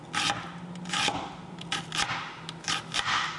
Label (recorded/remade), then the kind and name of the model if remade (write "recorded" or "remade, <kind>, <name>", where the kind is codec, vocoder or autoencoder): recorded